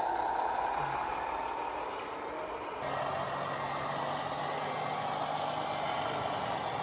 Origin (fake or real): real